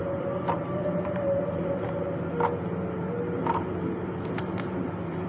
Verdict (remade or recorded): recorded